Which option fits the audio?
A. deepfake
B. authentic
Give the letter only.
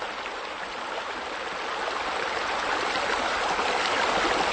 B